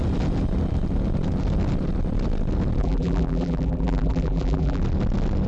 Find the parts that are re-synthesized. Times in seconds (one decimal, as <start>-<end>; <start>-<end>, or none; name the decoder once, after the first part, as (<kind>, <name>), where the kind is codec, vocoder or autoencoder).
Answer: 2.8-4.8 (vocoder, BigVGAN v2)